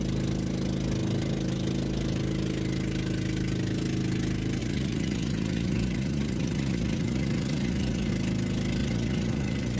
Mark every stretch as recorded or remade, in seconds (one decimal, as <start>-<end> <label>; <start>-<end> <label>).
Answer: 0.0-4.6 recorded; 4.6-8.1 remade; 8.1-8.8 recorded; 8.8-9.8 remade